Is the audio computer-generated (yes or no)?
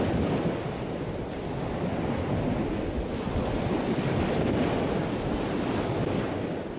no